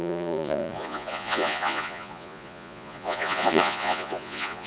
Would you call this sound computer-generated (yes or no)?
yes